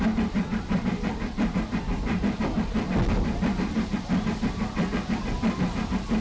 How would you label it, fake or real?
fake